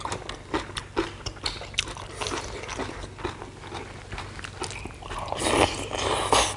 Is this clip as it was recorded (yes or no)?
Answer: yes